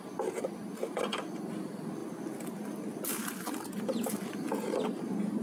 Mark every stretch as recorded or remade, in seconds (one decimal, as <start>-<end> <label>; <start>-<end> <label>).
0.0-5.4 recorded